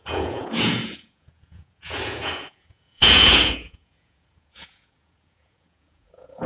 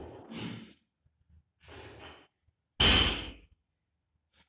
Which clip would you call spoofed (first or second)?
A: first